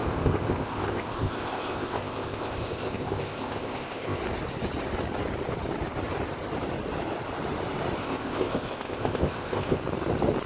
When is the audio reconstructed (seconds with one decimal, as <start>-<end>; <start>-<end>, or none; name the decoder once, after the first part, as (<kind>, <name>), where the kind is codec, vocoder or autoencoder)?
0.0-4.2 (codec, ZipCodec); 8.0-9.8

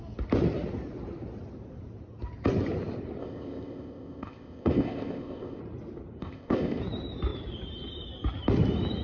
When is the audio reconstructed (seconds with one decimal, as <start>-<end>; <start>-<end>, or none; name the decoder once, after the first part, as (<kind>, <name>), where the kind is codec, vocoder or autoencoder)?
3.2-5.6 (codec, ZipCodec); 6.2-6.8

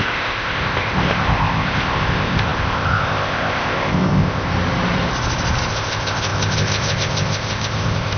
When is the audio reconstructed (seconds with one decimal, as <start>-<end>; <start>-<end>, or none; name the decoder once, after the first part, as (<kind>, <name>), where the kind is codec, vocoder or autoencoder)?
0.0-4.5 (codec, ZipCodec); 5.7-8.2

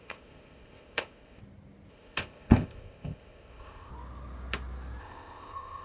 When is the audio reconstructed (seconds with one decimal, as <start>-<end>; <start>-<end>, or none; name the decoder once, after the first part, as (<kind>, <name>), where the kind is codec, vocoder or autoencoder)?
0.0-1.4 (codec, ZipCodec); 1.9-3.9; 5.0-5.8

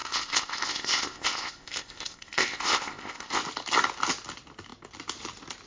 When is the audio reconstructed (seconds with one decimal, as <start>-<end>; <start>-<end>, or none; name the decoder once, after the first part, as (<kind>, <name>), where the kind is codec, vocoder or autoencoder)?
0.0-3.4 (codec, ZipCodec)